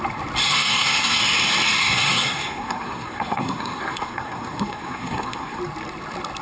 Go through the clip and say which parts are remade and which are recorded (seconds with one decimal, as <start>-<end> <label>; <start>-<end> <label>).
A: 0.0-0.4 recorded; 0.4-1.2 remade; 1.2-1.8 recorded; 1.8-5.6 remade; 5.6-6.4 recorded